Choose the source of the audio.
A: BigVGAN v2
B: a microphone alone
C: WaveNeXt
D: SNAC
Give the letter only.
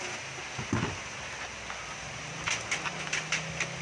B